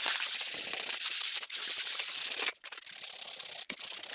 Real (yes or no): yes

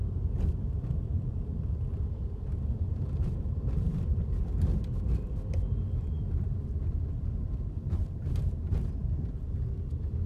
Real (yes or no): no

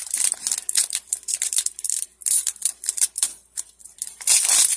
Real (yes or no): no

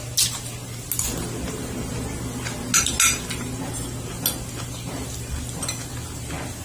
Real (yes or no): yes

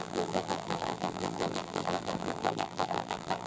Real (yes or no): no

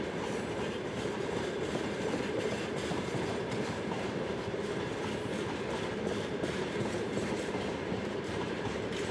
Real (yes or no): no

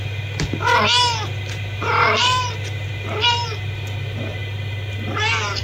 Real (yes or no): yes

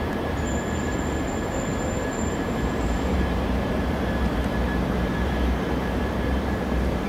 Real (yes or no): no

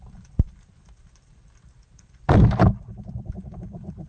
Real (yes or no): no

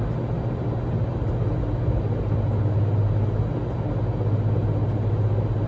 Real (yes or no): yes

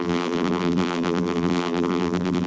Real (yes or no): no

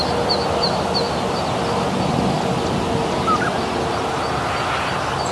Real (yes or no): yes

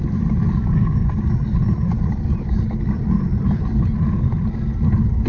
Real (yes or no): yes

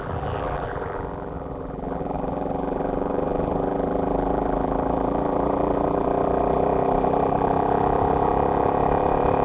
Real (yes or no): no